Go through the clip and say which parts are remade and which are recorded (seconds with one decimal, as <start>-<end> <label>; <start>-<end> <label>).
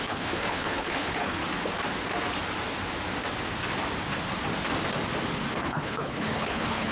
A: 0.0-1.4 remade; 1.4-5.5 recorded; 5.5-6.9 remade